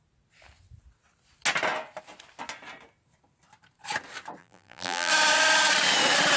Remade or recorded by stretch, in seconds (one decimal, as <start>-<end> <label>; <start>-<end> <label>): 0.0-4.4 recorded; 4.4-5.1 remade; 5.1-6.4 recorded